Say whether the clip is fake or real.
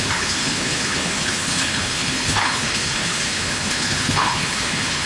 fake